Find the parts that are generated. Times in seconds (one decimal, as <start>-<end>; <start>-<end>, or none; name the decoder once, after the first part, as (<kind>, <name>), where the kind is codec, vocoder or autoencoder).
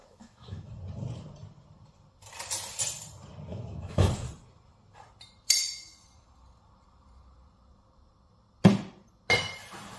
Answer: 0.0-0.7 (autoencoder, DAC-VAE); 3.5-4.1